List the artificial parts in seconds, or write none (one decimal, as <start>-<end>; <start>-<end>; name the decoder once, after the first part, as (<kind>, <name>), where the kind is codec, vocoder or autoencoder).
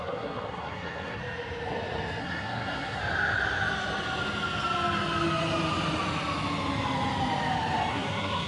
0.0-1.2 (codec, SNAC); 2.2-3.0; 7.9-8.5